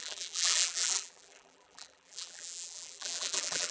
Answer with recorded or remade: remade